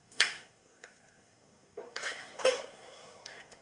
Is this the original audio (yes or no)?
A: no